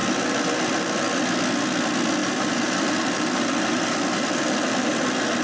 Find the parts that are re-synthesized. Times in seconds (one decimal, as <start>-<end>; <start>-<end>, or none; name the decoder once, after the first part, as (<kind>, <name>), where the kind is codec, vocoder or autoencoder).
0.0-1.2 (vocoder, BigVGAN v2); 2.2-5.4